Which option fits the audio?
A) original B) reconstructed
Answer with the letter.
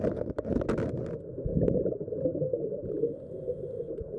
A